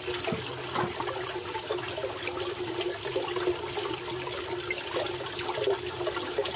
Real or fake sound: real